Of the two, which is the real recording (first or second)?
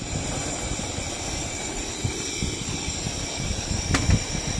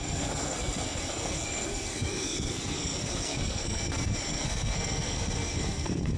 first